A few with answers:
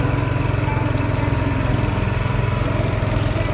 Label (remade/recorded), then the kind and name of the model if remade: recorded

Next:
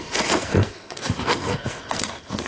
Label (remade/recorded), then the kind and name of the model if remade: remade, codec, SNAC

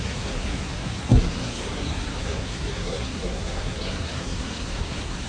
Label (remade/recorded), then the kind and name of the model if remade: remade, codec, SNAC